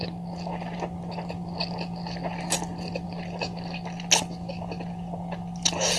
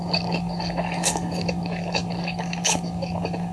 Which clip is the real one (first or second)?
first